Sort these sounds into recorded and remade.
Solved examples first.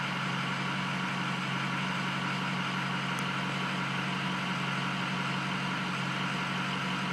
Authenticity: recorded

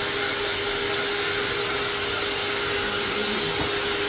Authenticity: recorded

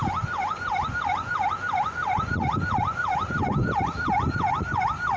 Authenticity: remade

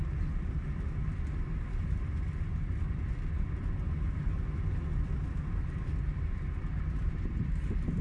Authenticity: recorded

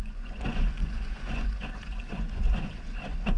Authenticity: remade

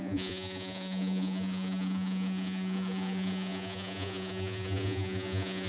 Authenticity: remade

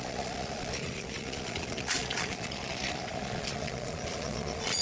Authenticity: remade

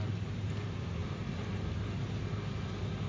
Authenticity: recorded